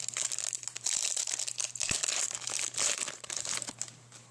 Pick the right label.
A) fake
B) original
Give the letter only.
B